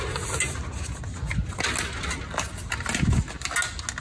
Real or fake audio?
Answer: real